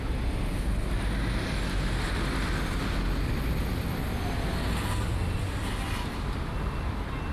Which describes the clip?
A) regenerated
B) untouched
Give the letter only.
B